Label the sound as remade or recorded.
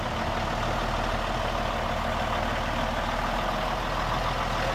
recorded